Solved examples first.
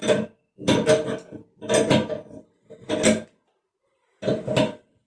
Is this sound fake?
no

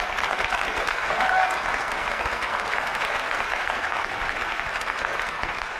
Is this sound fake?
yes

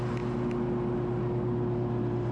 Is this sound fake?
no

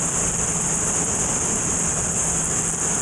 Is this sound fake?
yes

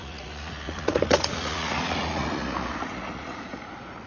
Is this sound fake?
yes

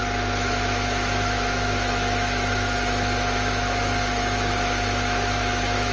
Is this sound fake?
yes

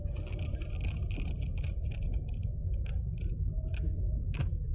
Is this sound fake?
no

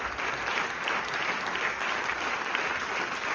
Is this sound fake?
no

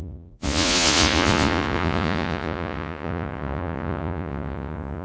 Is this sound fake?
yes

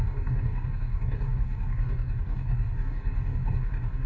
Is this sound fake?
yes